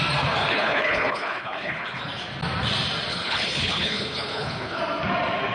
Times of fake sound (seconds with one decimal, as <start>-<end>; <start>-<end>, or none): 0.5-2.0; 3.1-4.8